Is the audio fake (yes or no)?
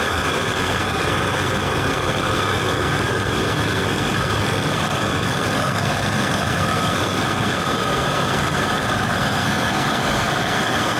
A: yes